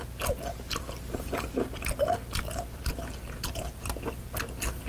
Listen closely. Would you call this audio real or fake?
real